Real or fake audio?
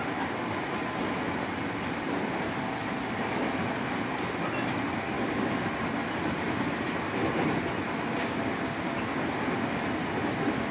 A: real